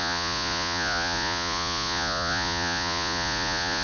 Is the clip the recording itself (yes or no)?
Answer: no